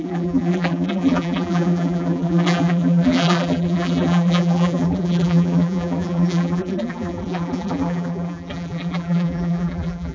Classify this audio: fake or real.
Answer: fake